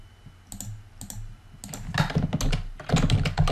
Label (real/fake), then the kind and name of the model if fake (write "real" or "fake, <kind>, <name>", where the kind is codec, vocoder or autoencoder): real